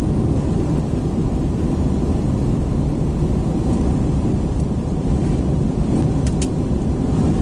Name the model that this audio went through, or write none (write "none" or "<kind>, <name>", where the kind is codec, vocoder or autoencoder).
none